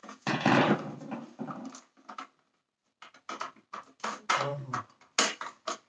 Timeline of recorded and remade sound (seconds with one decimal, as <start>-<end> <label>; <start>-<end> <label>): 0.0-0.5 remade; 0.5-5.9 recorded